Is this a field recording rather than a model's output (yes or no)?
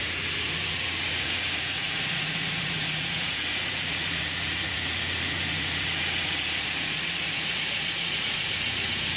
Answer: no